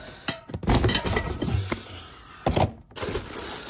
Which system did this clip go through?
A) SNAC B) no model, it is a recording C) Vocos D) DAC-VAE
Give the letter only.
B